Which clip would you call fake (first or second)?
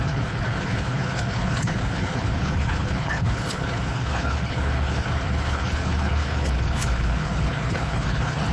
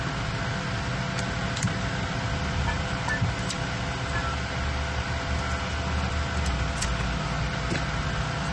first